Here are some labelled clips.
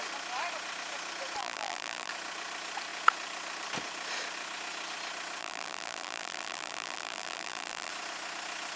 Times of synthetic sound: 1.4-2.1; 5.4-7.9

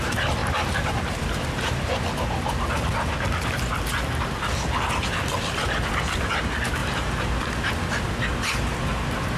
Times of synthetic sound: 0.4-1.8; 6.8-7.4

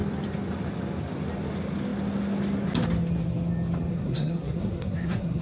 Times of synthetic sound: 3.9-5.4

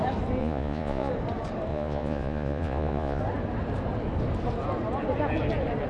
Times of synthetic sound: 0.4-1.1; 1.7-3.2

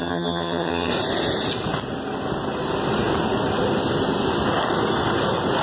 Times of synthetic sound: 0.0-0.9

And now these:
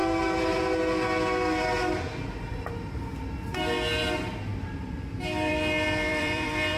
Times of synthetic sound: 6.1-6.8